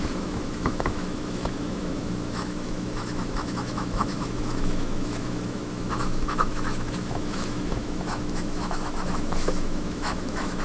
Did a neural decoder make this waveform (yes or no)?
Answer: yes